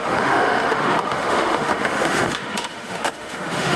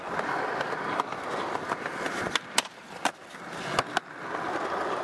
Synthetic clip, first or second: first